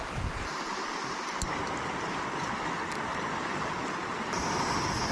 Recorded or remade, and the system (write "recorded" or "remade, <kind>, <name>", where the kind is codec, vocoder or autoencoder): recorded